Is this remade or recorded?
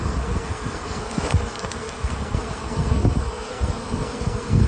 remade